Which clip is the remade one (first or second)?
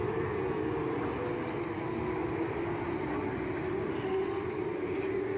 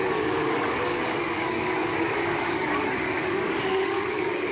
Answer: second